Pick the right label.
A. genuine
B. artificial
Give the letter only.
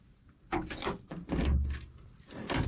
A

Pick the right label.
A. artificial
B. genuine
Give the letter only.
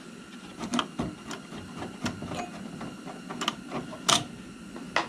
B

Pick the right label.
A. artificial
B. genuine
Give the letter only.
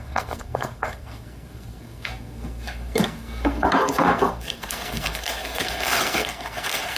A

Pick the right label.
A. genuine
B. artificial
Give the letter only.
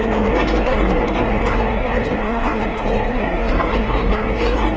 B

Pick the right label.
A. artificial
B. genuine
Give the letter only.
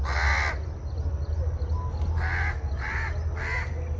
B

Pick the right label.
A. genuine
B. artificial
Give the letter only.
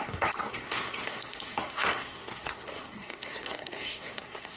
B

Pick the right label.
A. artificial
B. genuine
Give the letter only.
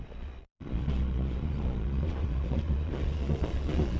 A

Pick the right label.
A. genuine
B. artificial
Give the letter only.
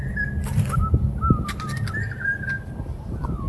A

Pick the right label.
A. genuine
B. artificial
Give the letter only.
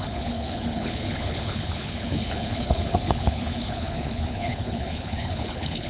B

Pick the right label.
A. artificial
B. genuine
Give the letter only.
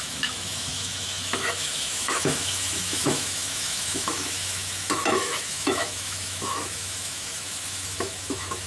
A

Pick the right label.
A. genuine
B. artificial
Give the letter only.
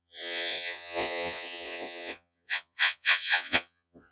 B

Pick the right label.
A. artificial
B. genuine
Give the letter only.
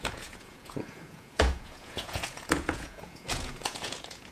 A